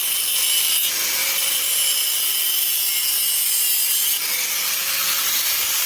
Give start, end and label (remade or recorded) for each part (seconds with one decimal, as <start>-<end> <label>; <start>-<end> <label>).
0.0-5.9 recorded